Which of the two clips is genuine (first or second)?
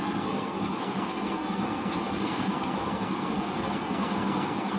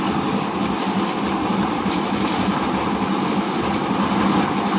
second